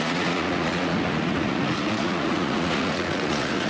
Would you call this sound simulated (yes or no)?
yes